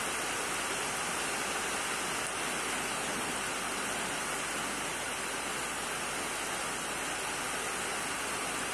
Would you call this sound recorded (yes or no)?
yes